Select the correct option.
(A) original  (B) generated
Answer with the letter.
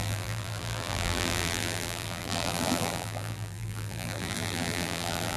B